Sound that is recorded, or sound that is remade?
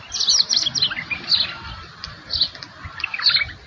recorded